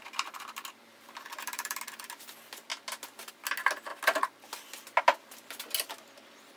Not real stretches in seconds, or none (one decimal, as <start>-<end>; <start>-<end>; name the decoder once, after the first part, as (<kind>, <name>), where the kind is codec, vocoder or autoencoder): 0.8-1.8 (vocoder, BigVGAN v2)